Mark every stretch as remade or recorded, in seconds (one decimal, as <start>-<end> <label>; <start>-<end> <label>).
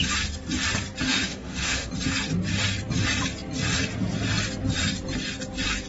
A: 0.0-1.1 recorded; 1.1-1.9 remade; 1.9-5.9 recorded